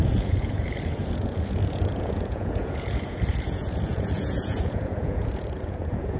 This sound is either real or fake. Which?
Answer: fake